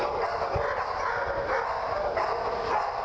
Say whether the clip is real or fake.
real